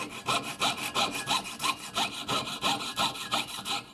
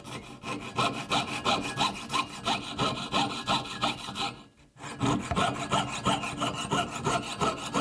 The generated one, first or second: first